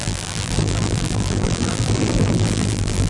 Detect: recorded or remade remade